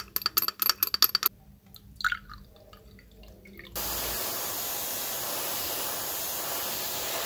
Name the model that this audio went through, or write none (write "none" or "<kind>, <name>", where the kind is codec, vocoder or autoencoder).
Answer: none